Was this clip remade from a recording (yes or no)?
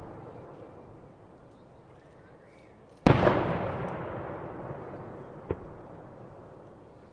no